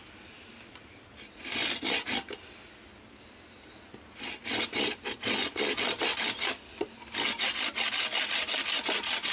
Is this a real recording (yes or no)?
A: yes